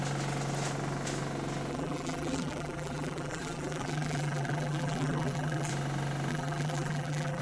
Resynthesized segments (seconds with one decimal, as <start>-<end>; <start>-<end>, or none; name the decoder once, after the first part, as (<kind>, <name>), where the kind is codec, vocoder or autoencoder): 1.7-5.7 (vocoder, BigVGAN v2); 6.3-7.4